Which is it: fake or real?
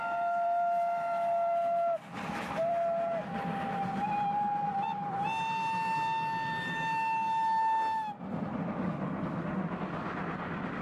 real